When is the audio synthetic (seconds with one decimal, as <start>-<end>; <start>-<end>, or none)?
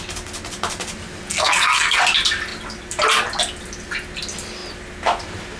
1.3-2.0